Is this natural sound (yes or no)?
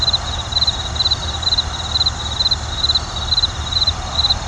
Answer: yes